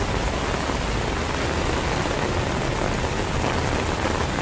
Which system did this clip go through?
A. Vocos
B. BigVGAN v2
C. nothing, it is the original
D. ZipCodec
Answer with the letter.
C